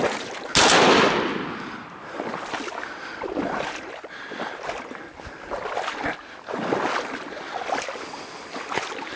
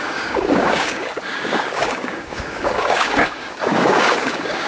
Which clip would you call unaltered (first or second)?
first